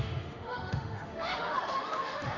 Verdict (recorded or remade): remade